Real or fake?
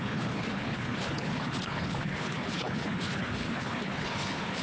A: fake